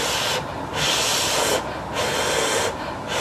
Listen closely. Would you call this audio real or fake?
real